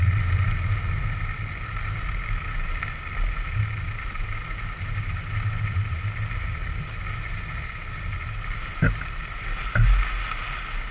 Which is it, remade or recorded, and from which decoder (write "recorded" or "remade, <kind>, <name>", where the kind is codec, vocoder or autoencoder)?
recorded